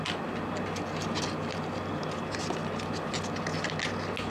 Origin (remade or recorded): recorded